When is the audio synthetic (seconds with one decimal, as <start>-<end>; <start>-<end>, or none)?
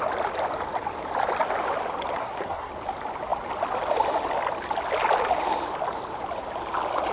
2.2-2.7